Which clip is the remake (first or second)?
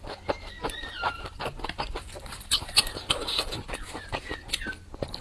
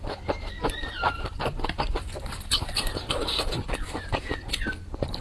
second